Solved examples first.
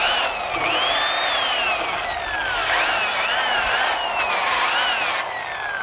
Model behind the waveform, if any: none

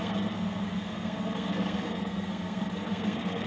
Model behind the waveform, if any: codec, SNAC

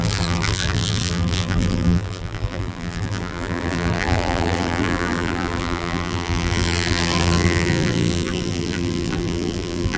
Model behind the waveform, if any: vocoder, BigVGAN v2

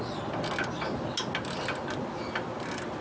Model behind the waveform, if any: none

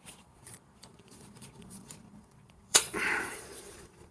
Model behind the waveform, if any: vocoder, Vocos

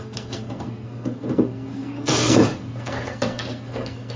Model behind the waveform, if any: codec, SNAC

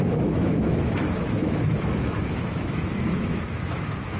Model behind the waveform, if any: autoencoder, DAC-VAE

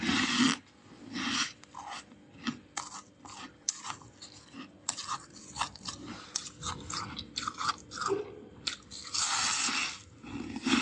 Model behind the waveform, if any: none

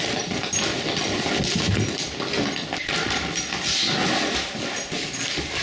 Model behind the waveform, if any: none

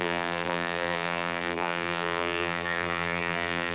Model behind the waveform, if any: vocoder, BigVGAN v2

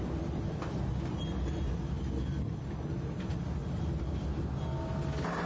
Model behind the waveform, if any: none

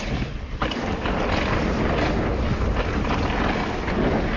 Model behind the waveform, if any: none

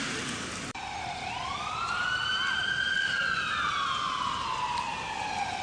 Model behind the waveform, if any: none